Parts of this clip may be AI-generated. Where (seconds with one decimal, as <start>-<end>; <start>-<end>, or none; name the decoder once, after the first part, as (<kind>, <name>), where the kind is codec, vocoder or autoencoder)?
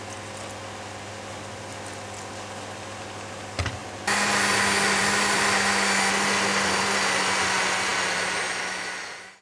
none